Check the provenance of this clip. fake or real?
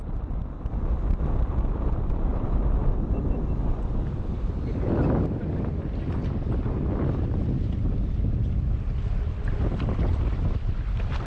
real